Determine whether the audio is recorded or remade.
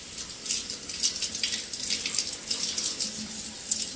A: recorded